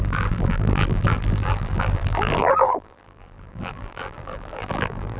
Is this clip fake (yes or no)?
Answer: yes